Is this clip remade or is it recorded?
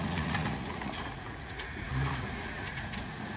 remade